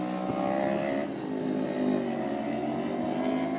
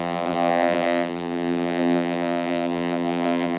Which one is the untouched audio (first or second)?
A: first